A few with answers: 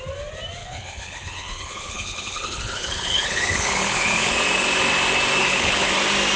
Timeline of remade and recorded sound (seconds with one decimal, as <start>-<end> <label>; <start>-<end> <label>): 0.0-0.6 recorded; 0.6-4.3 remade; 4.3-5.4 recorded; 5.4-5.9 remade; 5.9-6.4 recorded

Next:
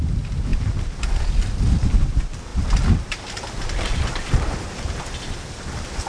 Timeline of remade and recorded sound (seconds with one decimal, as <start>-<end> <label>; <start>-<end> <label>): 0.0-6.1 recorded

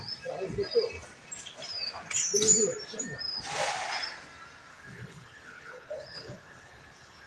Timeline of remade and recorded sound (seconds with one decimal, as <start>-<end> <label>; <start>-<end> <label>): 0.0-4.7 recorded; 4.7-7.3 remade